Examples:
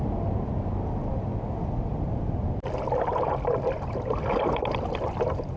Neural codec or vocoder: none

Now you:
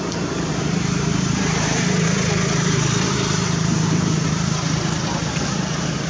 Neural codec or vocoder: vocoder, BigVGAN v2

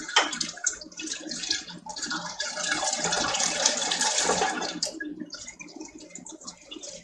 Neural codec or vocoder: vocoder, BigVGAN v2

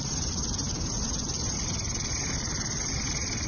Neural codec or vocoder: none